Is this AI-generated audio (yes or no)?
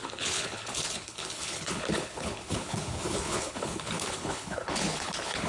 yes